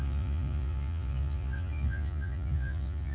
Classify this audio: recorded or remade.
remade